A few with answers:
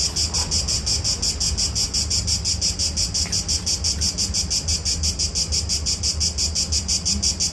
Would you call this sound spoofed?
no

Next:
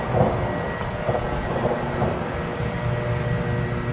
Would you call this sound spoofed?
no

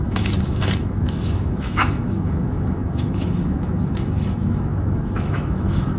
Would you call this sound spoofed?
yes